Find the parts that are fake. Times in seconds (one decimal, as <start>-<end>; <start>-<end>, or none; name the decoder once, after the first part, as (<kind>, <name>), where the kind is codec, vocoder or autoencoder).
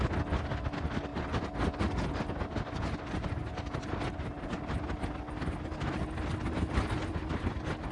none